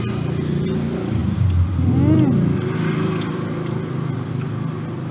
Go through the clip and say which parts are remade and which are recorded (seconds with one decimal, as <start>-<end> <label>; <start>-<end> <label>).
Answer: 0.0-5.1 recorded